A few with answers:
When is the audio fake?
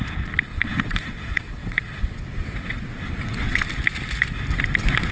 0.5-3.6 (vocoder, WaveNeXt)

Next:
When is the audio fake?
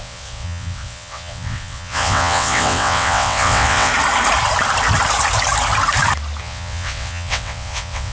0.0-3.9 (vocoder, WaveNeXt); 6.4-8.1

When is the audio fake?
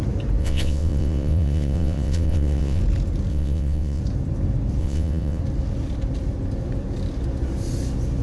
0.4-2.8 (vocoder, WaveNeXt); 3.3-4.0; 4.8-5.4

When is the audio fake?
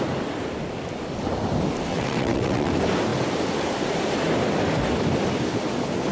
1.9-2.7 (vocoder, WaveNeXt)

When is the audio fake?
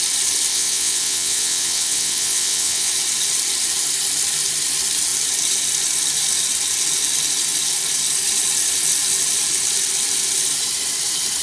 0.5-2.9 (vocoder, WaveNeXt)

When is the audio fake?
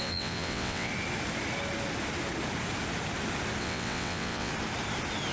0.0-0.9 (vocoder, WaveNeXt); 3.6-4.5